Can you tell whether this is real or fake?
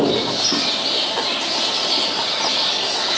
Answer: real